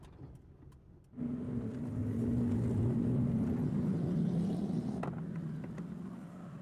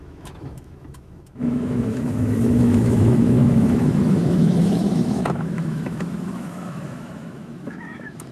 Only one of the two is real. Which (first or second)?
first